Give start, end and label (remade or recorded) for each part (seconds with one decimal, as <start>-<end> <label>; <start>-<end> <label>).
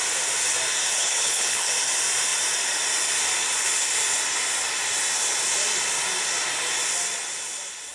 0.0-1.0 recorded; 1.0-1.7 remade; 1.7-7.9 recorded